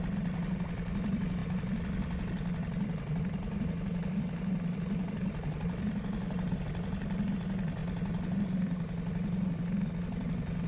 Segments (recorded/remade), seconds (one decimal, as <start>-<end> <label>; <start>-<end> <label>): 0.0-7.8 remade; 7.8-10.7 recorded